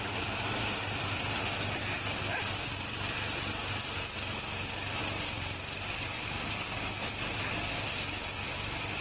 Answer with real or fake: real